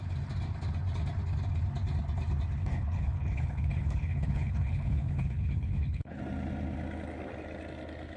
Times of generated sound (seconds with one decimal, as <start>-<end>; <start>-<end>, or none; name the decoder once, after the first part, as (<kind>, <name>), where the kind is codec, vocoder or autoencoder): 2.6-6.2 (codec, HILCodec)